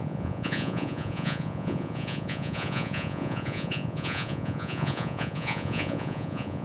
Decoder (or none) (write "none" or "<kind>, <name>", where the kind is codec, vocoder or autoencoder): vocoder, Vocos